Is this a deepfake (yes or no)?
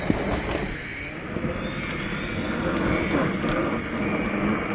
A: no